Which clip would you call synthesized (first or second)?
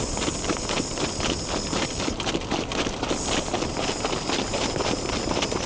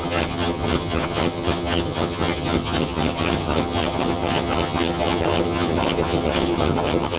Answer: second